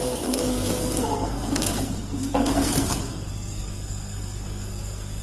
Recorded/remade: remade